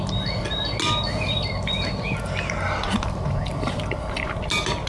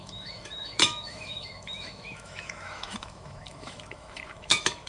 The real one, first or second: first